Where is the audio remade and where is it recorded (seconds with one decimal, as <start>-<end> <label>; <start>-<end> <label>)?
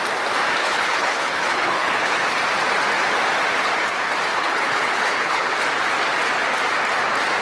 0.0-0.6 recorded; 0.6-2.2 remade; 2.2-4.3 recorded; 4.3-5.6 remade; 5.6-7.4 recorded